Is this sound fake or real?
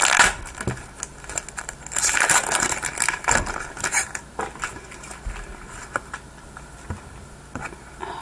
real